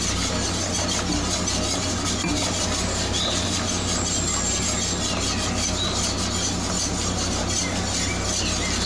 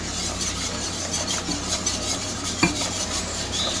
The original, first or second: first